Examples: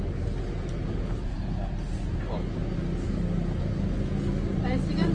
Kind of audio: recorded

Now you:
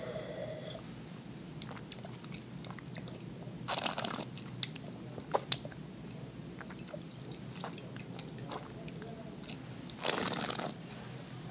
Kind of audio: recorded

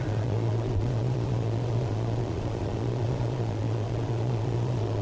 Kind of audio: remade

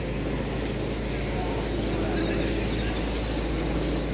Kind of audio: recorded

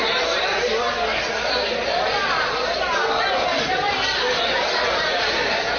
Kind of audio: recorded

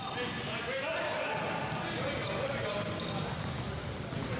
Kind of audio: recorded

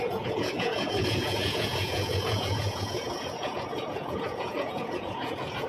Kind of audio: remade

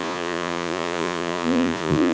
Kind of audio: remade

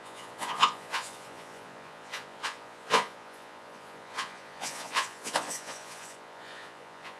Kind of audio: remade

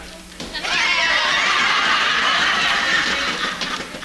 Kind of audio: recorded